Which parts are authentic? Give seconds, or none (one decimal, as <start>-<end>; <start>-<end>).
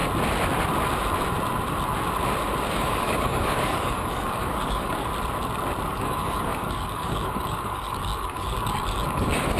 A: 0.0-2.7; 5.1-5.9